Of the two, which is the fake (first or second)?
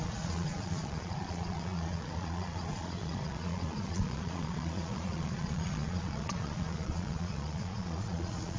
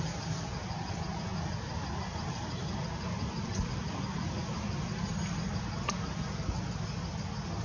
first